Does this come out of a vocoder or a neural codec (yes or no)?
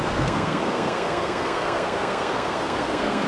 yes